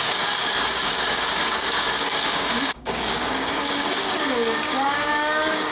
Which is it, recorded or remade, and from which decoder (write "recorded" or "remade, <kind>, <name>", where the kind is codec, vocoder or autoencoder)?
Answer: remade, codec, DAC